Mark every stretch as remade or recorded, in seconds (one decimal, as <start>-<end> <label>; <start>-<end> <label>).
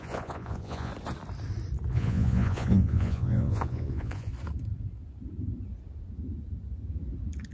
0.0-0.9 remade; 0.9-1.9 recorded; 1.9-4.3 remade; 4.3-7.5 recorded